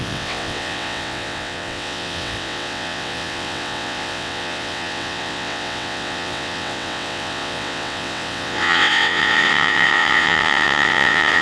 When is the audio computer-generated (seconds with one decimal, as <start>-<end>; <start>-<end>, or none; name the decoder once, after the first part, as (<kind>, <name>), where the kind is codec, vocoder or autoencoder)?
0.0-11.4 (vocoder, WaveNeXt)